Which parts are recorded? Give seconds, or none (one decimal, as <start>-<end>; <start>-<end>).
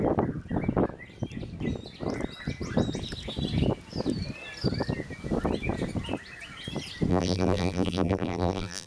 0.0-7.1